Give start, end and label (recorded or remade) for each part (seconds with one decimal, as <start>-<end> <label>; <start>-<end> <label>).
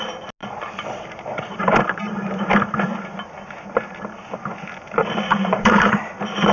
0.0-0.4 recorded; 0.4-3.0 remade; 3.0-5.0 recorded; 5.0-6.0 remade; 6.0-6.5 recorded